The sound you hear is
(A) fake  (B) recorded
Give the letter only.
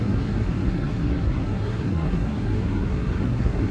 A